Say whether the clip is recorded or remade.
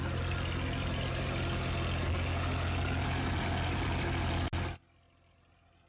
recorded